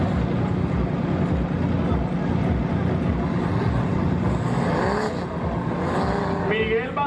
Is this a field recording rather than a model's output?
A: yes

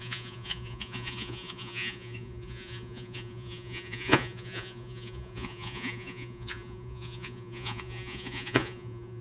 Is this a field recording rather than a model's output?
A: no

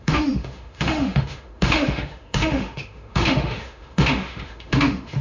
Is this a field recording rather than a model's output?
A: no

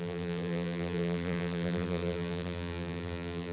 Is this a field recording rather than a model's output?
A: no